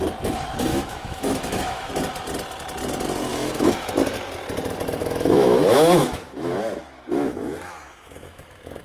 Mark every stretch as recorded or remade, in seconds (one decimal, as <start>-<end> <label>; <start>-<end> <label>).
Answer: 0.0-0.7 recorded; 0.7-1.9 remade; 1.9-3.3 recorded; 3.3-3.9 remade; 3.9-5.0 recorded; 5.0-6.6 remade; 6.6-7.1 recorded; 7.1-8.8 remade